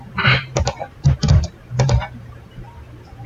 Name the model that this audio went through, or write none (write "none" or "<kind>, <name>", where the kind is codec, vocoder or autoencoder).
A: vocoder, BigVGAN v2